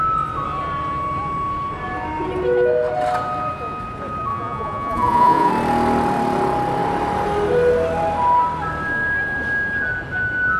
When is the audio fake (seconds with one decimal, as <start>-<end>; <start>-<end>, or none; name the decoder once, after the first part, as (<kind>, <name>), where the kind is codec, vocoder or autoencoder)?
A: 4.3-5.5 (vocoder, Vocos)